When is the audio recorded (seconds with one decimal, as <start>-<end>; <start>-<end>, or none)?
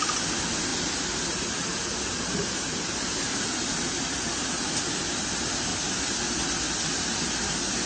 0.0-0.7; 4.8-7.9